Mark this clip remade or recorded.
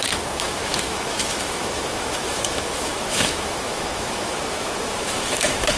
remade